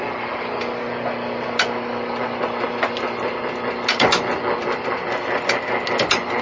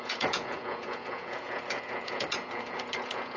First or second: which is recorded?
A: first